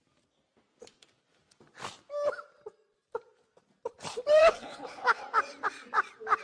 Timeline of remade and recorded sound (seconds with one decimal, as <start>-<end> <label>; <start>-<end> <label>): 0.0-4.4 recorded; 4.4-5.2 remade; 5.2-6.4 recorded